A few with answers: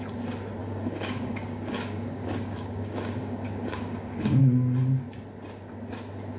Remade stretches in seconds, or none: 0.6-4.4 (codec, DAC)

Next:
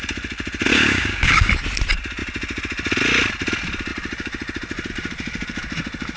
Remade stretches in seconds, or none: 0.7-1.5 (codec, DAC)

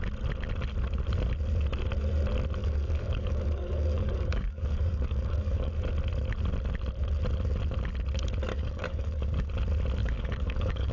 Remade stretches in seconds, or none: 2.6-5.7 (codec, DAC); 8.5-9.5; 10.0-10.9

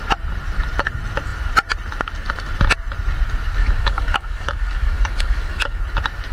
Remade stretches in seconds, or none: 3.6-5.8 (codec, DAC)

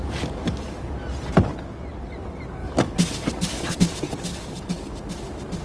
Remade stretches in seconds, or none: 0.0-0.9 (codec, DAC); 2.6-3.8; 4.3-4.9

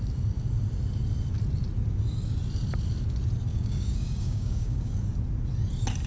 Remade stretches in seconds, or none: 3.5-4.9 (codec, DAC)